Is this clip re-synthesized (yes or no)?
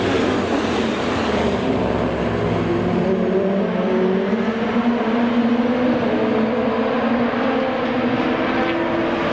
no